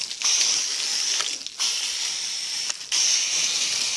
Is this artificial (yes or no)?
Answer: no